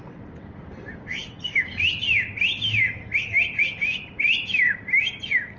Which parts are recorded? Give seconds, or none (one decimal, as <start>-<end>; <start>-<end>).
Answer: 0.0-5.6